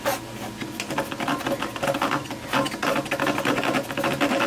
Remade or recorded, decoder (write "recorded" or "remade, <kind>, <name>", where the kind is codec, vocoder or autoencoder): recorded